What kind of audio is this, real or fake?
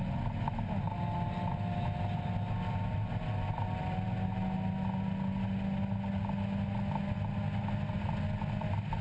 real